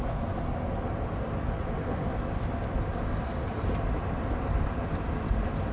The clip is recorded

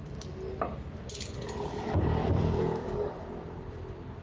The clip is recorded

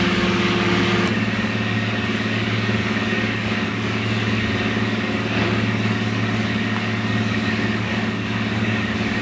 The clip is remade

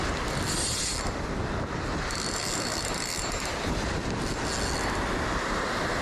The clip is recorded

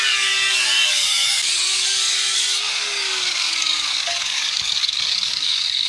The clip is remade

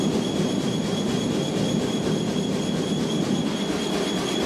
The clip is recorded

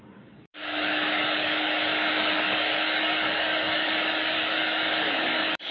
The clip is remade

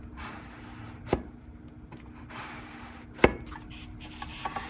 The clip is recorded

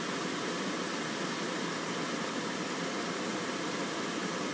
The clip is recorded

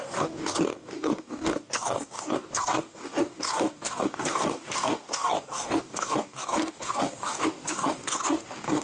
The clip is remade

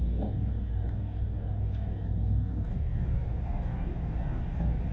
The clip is remade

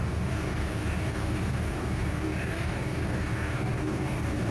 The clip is remade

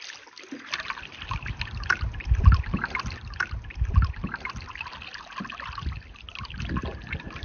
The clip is recorded